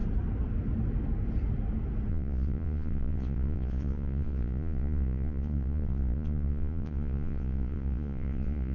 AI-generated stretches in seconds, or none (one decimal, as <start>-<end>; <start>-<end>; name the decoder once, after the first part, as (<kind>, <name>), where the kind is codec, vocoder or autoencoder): 2.1-8.7 (vocoder, Vocos)